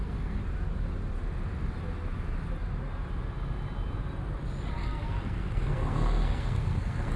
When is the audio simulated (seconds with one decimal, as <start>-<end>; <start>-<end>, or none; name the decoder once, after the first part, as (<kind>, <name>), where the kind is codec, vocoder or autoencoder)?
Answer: 0.0-0.4 (codec, SNAC); 4.7-7.2